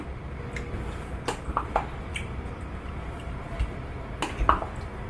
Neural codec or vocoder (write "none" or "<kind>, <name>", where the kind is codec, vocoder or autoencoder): none